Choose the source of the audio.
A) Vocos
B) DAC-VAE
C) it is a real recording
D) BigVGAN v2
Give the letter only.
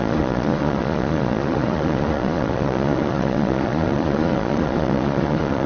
A